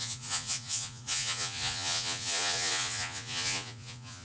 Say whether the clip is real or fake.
fake